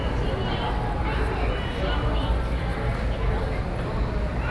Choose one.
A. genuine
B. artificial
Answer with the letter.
A